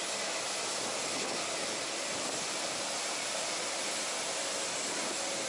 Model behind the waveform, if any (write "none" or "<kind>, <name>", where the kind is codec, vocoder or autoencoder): none